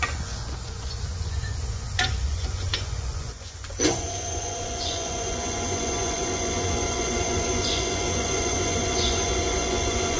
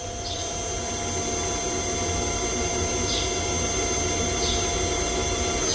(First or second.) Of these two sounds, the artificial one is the first